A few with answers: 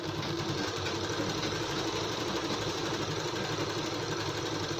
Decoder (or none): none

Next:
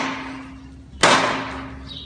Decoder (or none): none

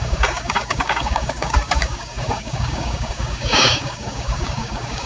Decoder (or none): codec, DAC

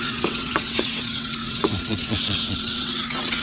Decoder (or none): vocoder, WaveNeXt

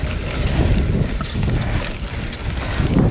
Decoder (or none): none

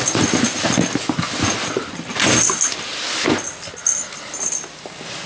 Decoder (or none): none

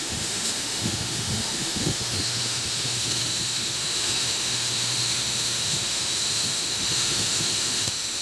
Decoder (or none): autoencoder, DAC-VAE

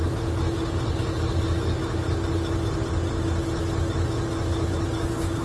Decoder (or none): none